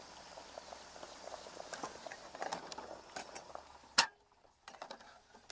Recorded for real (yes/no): yes